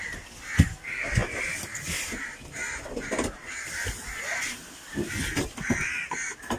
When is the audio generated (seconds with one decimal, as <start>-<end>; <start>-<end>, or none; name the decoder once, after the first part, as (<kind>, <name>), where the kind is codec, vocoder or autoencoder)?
none